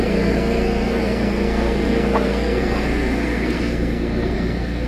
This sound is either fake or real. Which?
fake